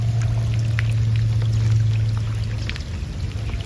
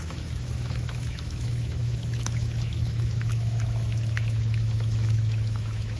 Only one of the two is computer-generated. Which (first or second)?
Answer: second